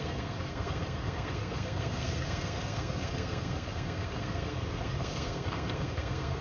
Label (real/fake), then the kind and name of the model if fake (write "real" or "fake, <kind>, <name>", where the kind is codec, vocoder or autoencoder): fake, codec, SNAC